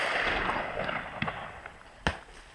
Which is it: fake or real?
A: real